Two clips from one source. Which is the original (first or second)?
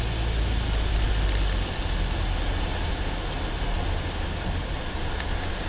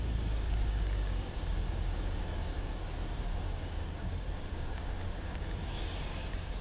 first